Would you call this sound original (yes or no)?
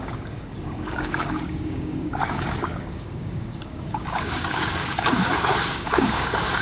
no